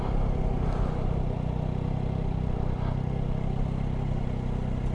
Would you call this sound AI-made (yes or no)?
no